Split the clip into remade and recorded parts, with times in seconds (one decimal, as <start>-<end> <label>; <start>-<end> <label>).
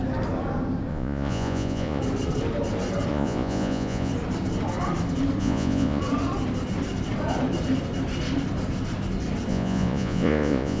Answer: 0.0-0.9 recorded; 0.9-2.0 remade; 2.0-3.1 recorded; 3.1-4.1 remade; 4.1-5.4 recorded; 5.4-6.0 remade; 6.0-9.5 recorded; 9.5-10.8 remade